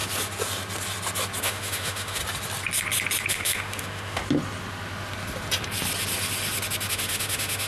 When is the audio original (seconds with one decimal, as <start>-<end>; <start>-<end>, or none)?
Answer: 0.0-1.4; 2.2-3.3; 4.2-6.9